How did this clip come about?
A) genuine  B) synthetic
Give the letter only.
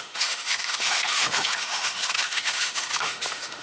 B